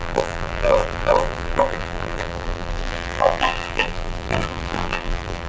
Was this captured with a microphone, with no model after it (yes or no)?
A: no